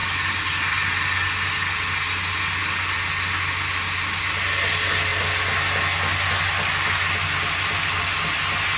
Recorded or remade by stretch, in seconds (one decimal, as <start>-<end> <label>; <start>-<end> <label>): 0.0-8.8 recorded